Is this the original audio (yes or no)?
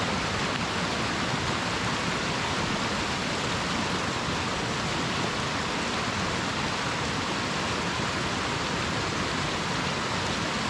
yes